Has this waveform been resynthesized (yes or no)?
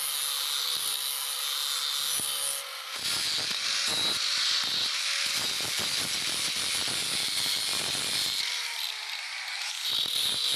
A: no